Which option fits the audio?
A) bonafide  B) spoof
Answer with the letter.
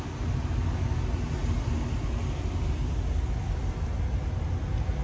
A